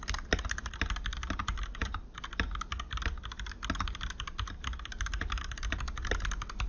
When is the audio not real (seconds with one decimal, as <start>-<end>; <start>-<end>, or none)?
none